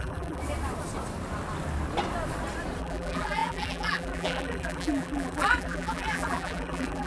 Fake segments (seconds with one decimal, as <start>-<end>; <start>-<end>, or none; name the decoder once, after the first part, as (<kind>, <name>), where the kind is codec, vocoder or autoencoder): 0.0-0.4 (vocoder, BigVGAN v2); 2.8-7.1